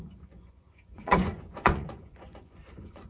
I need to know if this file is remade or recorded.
remade